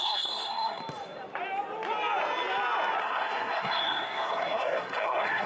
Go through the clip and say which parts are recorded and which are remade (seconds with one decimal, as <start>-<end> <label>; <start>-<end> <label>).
0.0-0.8 remade; 0.8-3.0 recorded; 3.0-5.5 remade